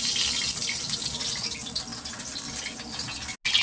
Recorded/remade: recorded